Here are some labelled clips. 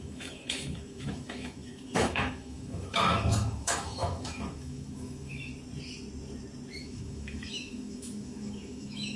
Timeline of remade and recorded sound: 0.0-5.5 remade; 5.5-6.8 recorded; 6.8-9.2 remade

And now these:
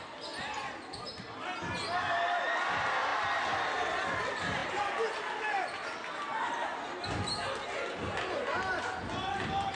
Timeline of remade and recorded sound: 0.0-9.7 recorded

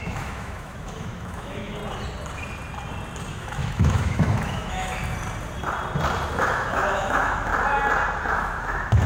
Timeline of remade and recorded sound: 0.0-1.8 remade; 1.8-3.3 recorded; 3.3-5.0 remade; 5.0-6.4 recorded; 6.4-7.5 remade; 7.5-8.3 recorded; 8.3-9.1 remade

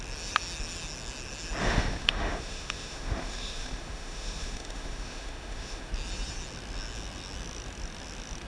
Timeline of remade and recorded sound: 0.0-1.6 recorded; 1.6-5.9 remade; 5.9-8.5 recorded

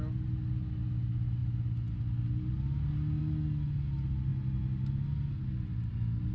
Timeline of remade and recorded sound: 0.0-6.3 recorded

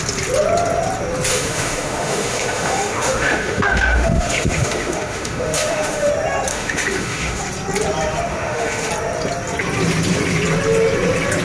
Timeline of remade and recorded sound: 0.0-1.3 recorded; 1.3-6.1 remade; 6.1-6.5 recorded; 6.5-7.4 remade; 7.4-8.3 recorded; 8.3-8.9 remade; 8.9-11.4 recorded